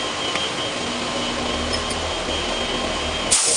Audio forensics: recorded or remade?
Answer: recorded